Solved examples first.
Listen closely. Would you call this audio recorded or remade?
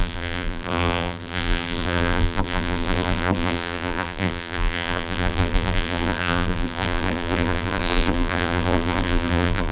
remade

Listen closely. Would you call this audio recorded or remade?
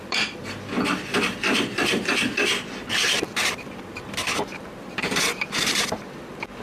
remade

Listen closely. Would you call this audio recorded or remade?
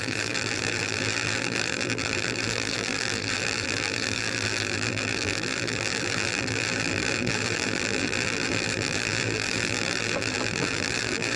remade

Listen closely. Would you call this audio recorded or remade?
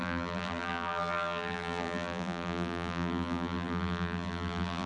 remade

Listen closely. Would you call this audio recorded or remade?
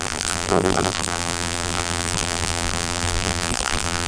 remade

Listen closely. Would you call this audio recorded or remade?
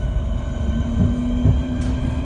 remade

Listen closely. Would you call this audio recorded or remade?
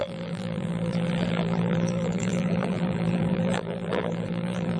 remade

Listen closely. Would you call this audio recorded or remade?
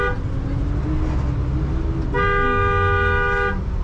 recorded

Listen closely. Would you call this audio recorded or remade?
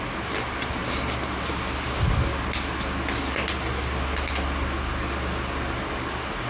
recorded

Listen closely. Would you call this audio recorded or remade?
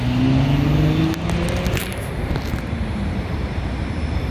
recorded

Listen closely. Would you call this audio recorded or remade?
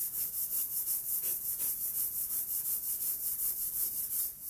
remade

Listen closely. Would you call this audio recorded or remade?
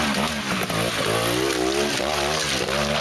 recorded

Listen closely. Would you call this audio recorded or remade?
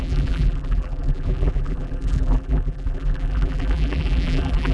remade